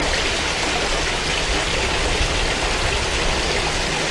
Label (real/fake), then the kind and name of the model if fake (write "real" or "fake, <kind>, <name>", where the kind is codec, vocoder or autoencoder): real